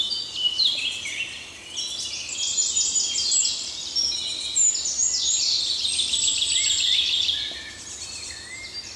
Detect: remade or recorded recorded